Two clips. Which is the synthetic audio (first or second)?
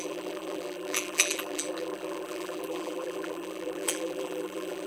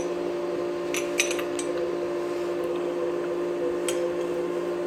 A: first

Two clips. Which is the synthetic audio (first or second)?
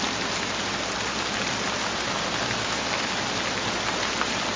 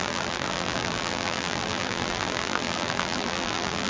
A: second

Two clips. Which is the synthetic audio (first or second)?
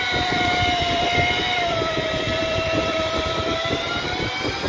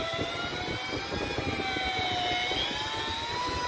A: first